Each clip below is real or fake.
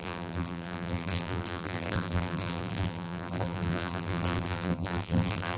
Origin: fake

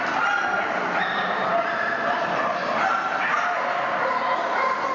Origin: real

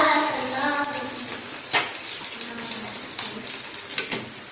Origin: real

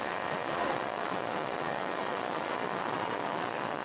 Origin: fake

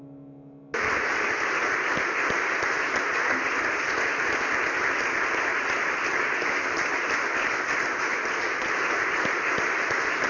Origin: real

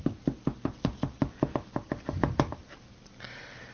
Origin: real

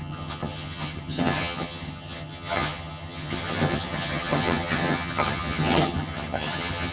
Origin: fake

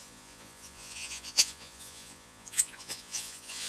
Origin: fake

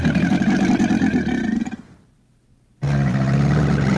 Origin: real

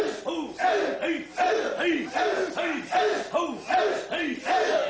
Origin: real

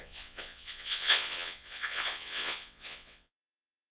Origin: fake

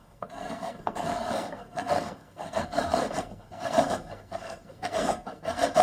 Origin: fake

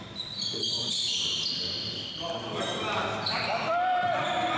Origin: real